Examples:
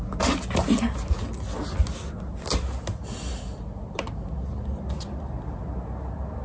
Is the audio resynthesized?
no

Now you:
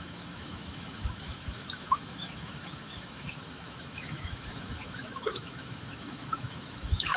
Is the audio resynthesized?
yes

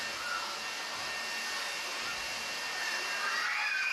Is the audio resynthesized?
no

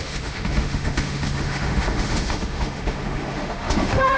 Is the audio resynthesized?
yes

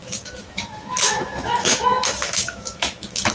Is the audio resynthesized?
yes